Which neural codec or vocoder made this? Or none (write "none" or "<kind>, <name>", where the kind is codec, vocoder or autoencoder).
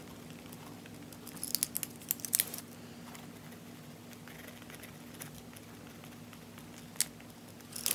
none